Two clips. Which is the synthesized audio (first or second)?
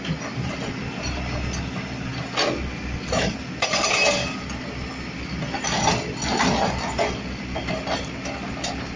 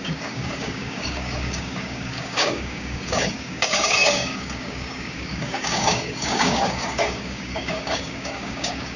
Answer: second